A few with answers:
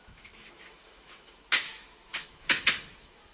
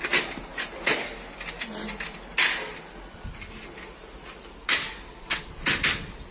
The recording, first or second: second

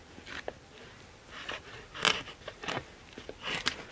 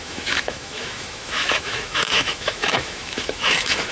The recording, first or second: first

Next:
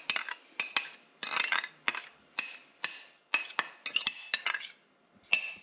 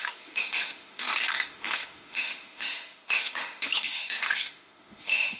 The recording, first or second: first